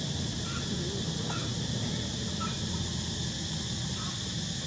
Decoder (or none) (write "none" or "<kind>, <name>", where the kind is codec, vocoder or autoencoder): none